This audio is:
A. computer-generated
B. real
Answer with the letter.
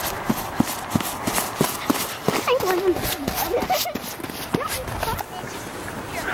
B